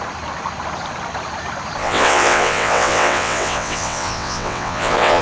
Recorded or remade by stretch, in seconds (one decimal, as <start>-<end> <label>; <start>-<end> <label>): 0.0-1.8 recorded; 1.8-5.2 remade